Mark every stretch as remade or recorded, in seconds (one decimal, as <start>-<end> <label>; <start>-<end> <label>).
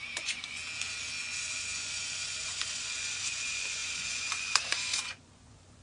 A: 0.0-0.6 remade; 0.6-1.2 recorded; 1.2-5.8 remade